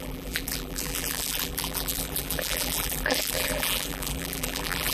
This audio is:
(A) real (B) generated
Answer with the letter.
B